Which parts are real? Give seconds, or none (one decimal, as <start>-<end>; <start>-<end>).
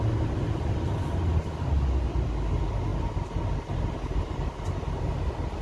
0.0-5.6